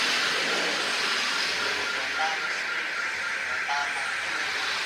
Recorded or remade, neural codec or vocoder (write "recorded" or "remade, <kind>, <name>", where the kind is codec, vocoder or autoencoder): recorded